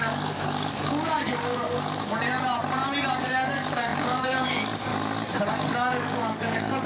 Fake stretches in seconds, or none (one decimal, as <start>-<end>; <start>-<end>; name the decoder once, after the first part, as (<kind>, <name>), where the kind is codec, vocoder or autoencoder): 0.0-2.2 (codec, DAC); 3.2-4.9; 5.5-6.9